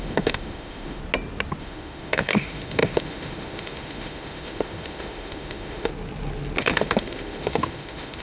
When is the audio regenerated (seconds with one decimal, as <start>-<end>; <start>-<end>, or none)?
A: 0.0-1.0; 1.6-5.9; 6.6-8.2